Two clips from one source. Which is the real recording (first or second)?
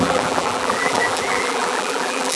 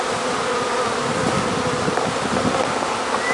second